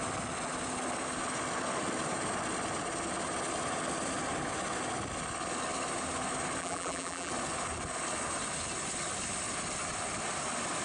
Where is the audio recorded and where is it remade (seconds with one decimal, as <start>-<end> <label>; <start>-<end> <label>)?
0.0-6.6 recorded; 6.6-7.3 remade; 7.3-10.8 recorded